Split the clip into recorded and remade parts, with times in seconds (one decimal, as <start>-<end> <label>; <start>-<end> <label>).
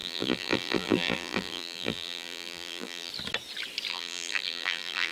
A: 0.0-3.1 remade; 3.1-3.9 recorded; 3.9-5.1 remade